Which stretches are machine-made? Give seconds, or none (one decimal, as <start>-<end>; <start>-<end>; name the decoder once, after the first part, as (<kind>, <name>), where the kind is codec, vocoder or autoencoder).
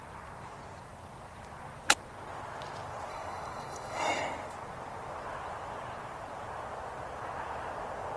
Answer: 3.1-4.2 (codec, DAC)